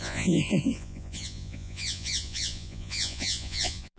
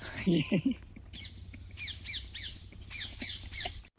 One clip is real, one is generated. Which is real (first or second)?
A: second